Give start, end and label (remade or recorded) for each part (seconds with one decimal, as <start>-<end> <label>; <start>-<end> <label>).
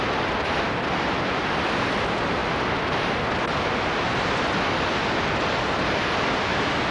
0.0-6.9 recorded